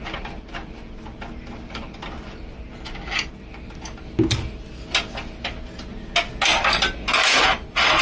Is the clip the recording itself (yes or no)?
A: yes